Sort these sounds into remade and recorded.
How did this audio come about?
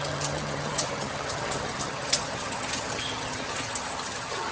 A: remade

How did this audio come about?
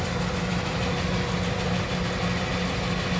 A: recorded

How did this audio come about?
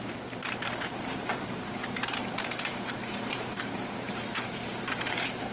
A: remade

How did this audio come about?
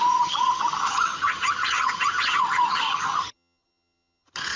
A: remade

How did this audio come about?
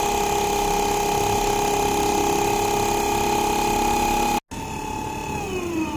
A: recorded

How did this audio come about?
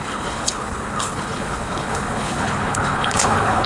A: remade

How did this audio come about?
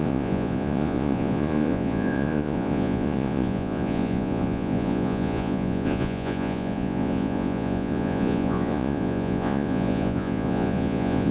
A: remade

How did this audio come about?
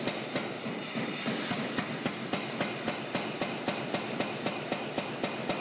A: recorded